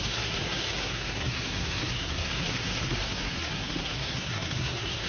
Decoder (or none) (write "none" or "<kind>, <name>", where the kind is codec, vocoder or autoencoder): codec, SNAC